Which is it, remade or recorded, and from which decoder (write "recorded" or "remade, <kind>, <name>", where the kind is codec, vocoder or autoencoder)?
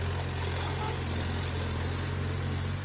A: recorded